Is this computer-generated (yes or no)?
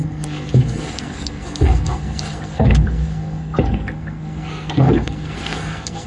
yes